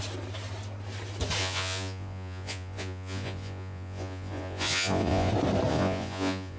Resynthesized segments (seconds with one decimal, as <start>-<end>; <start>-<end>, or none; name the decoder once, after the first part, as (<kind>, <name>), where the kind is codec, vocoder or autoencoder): 1.4-5.3 (vocoder, Vocos); 5.7-6.6